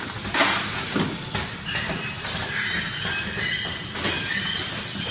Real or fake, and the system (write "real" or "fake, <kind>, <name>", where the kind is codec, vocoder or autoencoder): real